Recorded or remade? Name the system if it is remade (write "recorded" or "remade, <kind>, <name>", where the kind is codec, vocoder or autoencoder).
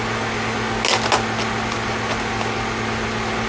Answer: recorded